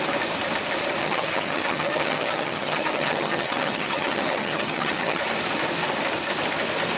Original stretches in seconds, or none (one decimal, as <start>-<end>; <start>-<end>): 0.0-1.0; 5.2-7.0